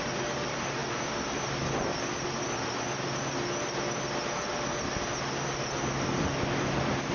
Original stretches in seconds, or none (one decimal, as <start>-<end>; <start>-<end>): 0.0-7.1